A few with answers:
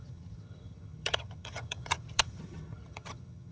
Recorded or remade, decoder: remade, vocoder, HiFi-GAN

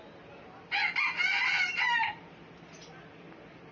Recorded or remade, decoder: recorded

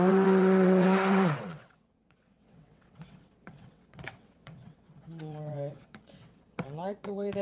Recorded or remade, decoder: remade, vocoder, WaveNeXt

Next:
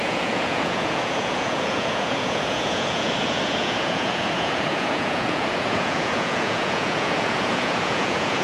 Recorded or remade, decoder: remade, vocoder, Vocos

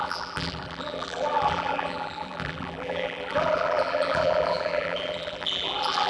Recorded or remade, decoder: remade, vocoder, BigVGAN v2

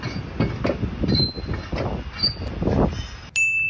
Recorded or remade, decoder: recorded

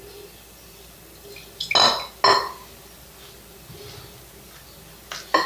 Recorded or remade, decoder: recorded